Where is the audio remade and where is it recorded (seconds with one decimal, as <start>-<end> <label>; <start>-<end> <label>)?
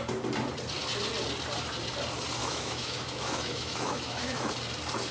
0.0-2.4 recorded; 2.4-4.5 remade; 4.5-5.1 recorded